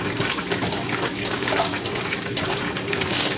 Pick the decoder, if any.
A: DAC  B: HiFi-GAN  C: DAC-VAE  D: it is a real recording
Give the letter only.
A